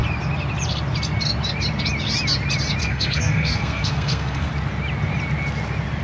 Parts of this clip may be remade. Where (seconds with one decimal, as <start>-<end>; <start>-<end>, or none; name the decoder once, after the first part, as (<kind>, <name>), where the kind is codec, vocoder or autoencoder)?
2.8-4.5 (codec, SNAC)